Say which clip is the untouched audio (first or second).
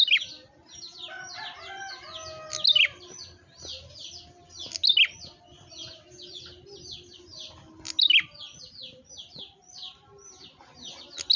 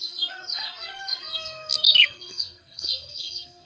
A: first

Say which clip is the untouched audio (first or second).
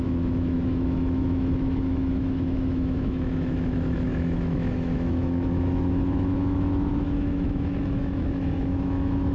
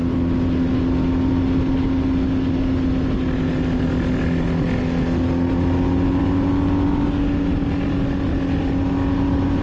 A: second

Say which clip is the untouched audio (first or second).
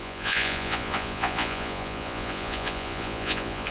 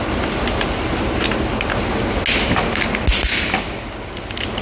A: second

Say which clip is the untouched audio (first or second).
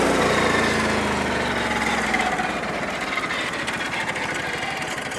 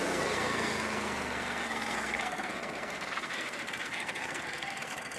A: first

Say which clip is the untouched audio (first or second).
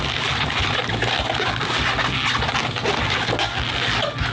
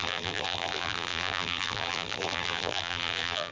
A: first